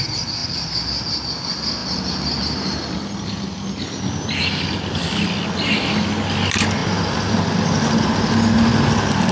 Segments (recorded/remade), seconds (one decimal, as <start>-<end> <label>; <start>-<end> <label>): 0.0-9.3 recorded